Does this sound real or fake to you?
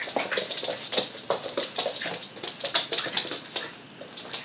real